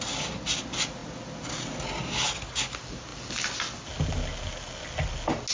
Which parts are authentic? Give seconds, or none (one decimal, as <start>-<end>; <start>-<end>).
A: 0.0-5.5